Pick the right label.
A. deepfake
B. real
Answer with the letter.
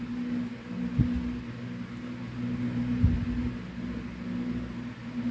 B